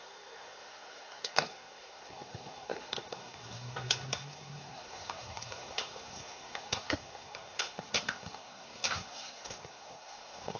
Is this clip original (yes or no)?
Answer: no